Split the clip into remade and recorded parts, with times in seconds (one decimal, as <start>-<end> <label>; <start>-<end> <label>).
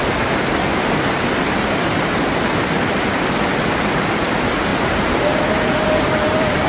0.0-4.7 recorded; 4.7-6.0 remade; 6.0-6.7 recorded